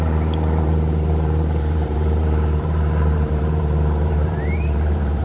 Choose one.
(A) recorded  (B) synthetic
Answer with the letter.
B